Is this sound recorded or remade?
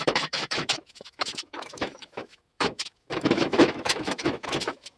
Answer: remade